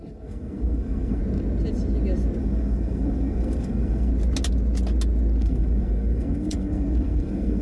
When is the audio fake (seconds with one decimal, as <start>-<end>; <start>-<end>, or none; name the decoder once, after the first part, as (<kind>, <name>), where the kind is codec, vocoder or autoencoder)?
0.0-1.2 (codec, SNAC); 2.4-4.1; 5.4-7.6